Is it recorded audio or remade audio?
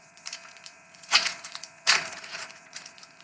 remade